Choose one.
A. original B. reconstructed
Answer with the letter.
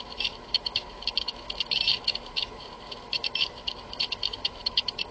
B